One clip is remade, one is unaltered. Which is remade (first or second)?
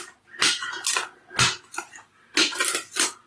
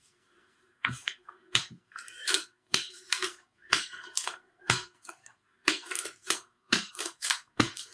second